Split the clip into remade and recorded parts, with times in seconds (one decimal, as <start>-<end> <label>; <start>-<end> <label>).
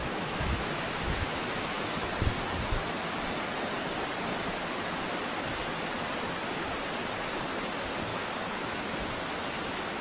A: 0.0-2.1 remade; 2.1-8.1 recorded; 8.1-8.8 remade; 8.8-10.0 recorded